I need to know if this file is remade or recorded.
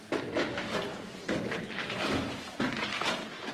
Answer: recorded